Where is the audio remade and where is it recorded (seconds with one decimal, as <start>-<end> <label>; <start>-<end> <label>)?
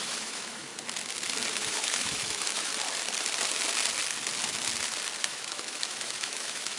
0.0-0.7 remade; 0.7-1.5 recorded; 1.5-2.7 remade; 2.7-5.2 recorded; 5.2-6.8 remade